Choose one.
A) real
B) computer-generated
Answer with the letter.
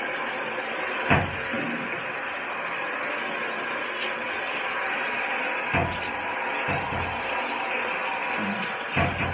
A